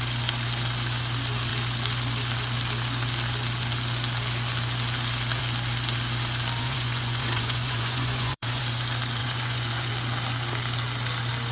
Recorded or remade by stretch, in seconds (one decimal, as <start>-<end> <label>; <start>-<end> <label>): 0.0-6.6 recorded; 6.6-8.6 remade; 8.6-9.2 recorded; 9.2-9.9 remade; 9.9-11.5 recorded